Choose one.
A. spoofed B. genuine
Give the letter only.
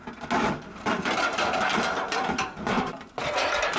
B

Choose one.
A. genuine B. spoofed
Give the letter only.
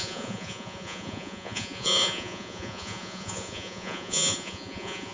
B